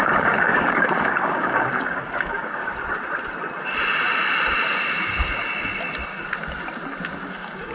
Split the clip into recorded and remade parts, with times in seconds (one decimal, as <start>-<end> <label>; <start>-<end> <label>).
0.0-2.7 remade; 2.7-7.3 recorded; 7.3-7.7 remade